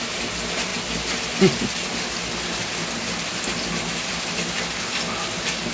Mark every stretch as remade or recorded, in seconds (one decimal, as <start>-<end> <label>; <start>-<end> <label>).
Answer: 0.0-5.7 recorded